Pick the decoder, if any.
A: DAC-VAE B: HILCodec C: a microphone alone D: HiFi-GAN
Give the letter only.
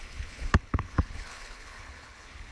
B